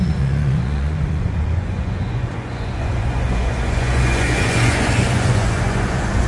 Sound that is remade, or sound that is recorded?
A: remade